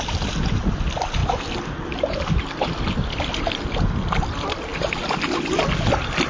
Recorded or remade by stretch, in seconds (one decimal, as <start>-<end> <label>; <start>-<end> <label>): 0.0-6.3 recorded